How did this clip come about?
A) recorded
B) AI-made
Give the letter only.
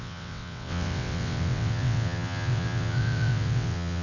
B